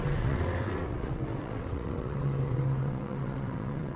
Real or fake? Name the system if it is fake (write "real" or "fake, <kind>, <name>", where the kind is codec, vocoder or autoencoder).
fake, vocoder, WaveNeXt